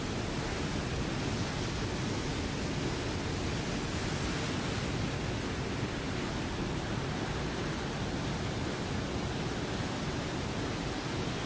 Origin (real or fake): real